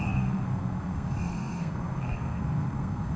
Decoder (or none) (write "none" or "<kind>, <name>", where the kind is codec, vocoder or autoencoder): codec, SNAC